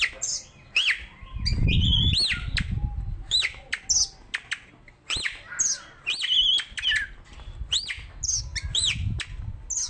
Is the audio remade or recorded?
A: recorded